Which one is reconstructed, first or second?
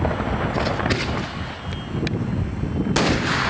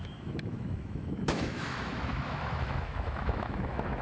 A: second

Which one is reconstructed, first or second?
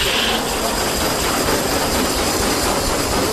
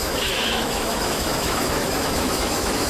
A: second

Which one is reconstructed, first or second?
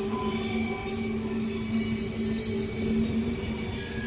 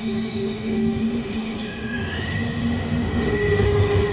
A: second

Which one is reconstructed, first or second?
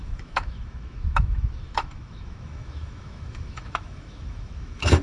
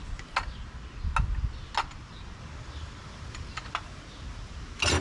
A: first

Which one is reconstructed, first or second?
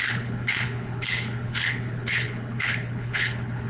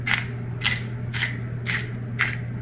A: first